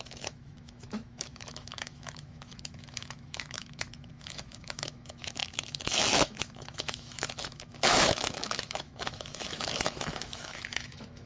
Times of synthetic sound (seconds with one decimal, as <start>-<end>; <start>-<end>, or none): 0.0-11.3